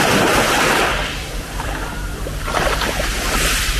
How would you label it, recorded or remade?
remade